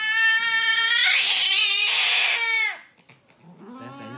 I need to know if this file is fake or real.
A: real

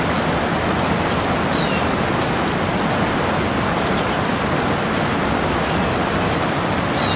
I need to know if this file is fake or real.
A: real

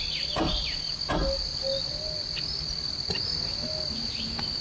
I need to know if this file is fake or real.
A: real